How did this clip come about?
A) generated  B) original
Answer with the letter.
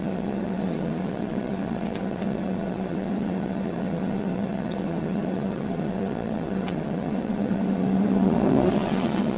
A